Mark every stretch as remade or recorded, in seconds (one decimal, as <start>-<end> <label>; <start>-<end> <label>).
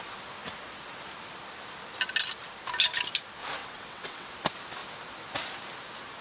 0.0-3.6 recorded; 3.6-4.3 remade; 4.3-6.2 recorded